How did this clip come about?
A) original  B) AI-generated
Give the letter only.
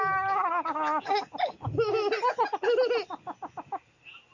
A